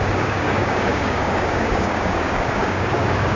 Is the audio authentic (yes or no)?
no